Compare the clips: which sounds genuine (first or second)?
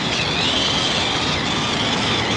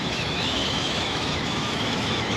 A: first